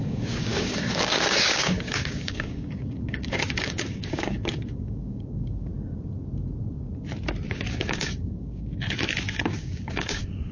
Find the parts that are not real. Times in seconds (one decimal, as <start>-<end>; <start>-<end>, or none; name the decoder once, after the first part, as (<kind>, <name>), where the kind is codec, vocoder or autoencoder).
0.0-5.7 (codec, DAC); 7.5-10.5